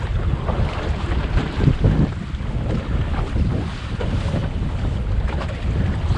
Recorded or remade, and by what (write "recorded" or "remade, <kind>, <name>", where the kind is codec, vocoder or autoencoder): recorded